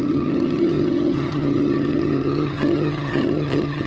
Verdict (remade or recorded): remade